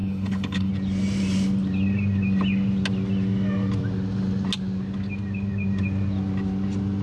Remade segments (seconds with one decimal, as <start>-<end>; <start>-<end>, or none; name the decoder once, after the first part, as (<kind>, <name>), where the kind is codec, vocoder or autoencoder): 0.0-0.7 (codec, HILCodec)